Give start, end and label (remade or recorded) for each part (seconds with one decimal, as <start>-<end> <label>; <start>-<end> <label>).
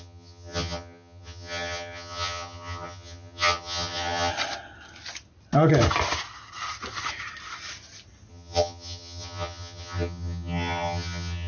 0.0-4.3 remade; 4.3-8.3 recorded; 8.3-11.5 remade